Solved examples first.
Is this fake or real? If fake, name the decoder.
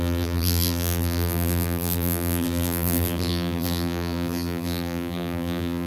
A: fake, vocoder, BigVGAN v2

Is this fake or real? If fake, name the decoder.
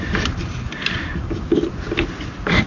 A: real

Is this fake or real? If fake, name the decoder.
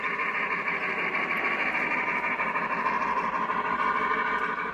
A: real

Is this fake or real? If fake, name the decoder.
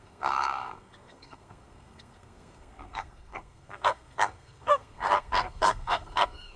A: fake, codec, SNAC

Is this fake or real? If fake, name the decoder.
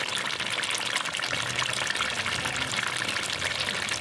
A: real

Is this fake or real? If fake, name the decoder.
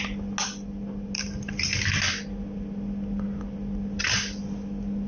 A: real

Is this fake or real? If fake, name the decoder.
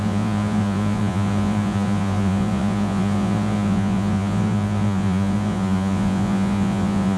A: fake, vocoder, Vocos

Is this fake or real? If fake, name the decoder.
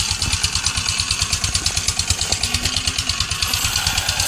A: real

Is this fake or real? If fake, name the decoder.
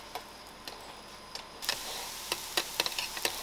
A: real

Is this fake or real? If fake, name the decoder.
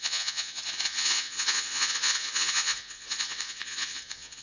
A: fake, vocoder, Vocos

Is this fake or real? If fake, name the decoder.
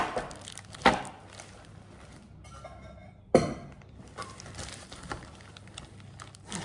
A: real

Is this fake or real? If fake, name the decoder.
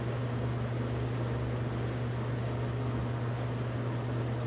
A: real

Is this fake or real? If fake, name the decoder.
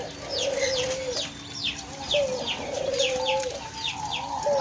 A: fake, vocoder, BigVGAN v2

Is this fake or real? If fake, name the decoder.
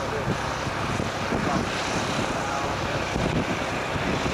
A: real